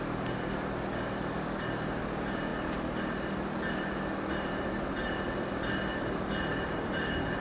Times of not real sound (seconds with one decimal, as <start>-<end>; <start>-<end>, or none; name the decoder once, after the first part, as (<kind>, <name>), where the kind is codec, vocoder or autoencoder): none